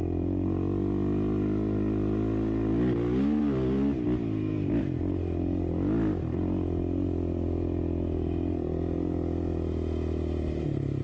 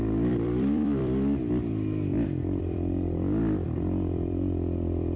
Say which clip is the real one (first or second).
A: first